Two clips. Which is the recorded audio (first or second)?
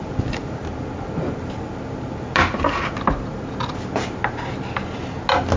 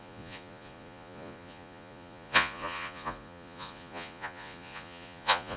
first